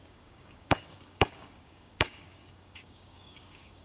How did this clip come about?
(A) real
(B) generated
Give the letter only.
B